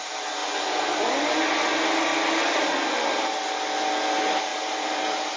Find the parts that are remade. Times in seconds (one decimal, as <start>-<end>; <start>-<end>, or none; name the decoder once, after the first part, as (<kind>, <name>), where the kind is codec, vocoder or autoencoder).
4.5-5.4 (vocoder, BigVGAN v2)